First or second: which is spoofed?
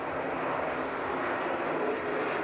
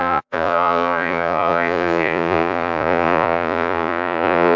second